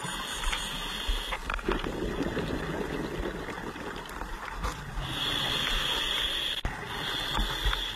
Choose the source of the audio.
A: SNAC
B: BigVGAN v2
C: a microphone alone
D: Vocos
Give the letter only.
C